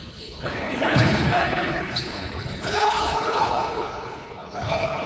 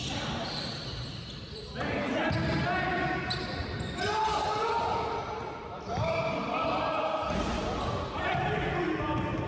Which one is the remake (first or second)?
first